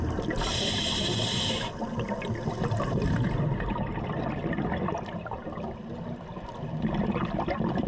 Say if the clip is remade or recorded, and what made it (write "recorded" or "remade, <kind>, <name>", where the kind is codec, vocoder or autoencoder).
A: recorded